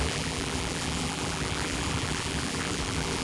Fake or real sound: fake